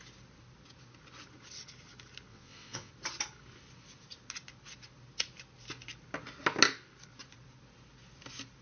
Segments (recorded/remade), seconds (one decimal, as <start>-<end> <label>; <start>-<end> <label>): 0.0-2.3 recorded; 2.3-2.9 remade; 2.9-8.6 recorded